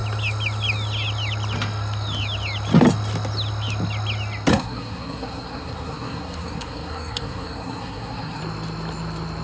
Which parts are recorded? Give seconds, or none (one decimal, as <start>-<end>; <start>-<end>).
0.0-4.5; 8.4-9.4